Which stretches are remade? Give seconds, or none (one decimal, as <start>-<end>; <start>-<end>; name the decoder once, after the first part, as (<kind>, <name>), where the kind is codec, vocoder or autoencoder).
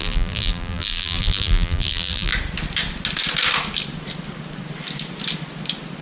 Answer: 0.0-2.3 (vocoder, BigVGAN v2)